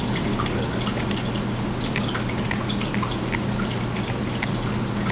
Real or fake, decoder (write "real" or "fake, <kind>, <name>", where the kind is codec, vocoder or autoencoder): real